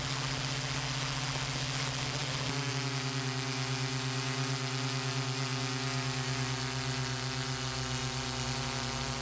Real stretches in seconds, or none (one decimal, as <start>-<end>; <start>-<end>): 0.0-9.2